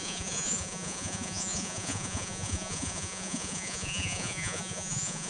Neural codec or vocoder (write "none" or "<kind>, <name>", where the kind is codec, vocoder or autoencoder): vocoder, Vocos